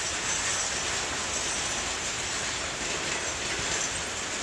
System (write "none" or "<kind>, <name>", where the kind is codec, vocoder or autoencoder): none